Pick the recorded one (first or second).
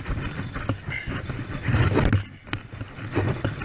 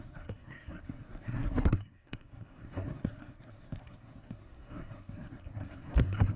first